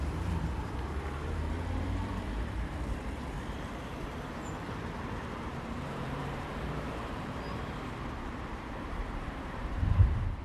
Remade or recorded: remade